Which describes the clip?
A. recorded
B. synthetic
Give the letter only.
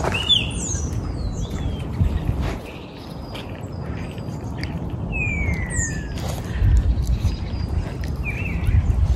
A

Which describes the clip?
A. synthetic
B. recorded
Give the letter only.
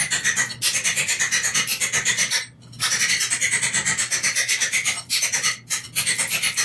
B